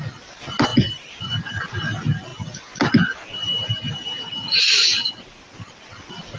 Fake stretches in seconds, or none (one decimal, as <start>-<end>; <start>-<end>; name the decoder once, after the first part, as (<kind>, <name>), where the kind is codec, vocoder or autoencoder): none

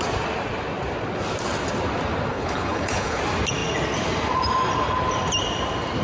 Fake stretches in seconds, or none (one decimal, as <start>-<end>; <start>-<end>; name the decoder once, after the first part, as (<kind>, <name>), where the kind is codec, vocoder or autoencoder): 2.3-3.2 (codec, HILCodec)

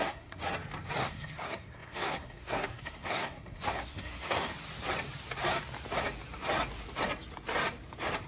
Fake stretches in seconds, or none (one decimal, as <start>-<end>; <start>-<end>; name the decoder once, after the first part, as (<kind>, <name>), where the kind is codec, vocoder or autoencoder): 0.0-0.4 (codec, SNAC); 1.0-4.5

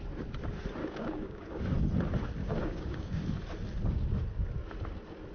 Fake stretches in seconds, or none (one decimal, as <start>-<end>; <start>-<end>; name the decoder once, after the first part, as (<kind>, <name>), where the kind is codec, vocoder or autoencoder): 0.8-1.6 (codec, DAC); 2.4-3.2

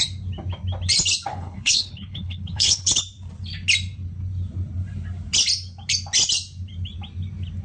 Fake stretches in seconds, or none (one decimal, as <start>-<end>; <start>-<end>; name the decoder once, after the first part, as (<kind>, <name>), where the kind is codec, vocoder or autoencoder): 1.3-3.0 (codec, HILCodec)